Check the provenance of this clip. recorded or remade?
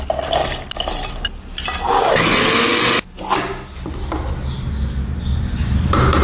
recorded